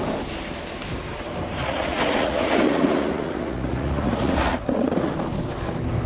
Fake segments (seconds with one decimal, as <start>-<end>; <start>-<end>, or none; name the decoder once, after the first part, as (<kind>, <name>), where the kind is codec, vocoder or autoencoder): 1.6-5.1 (vocoder, Vocos)